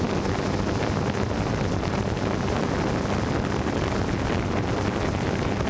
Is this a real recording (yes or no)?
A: yes